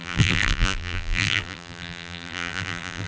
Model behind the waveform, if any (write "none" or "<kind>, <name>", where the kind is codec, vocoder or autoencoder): vocoder, BigVGAN v2